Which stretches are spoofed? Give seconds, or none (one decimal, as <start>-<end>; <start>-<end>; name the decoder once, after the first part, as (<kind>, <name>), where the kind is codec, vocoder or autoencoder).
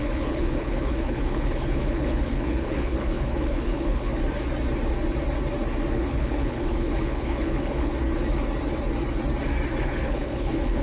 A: 0.0-4.1 (codec, HILCodec); 5.9-7.9; 9.8-10.8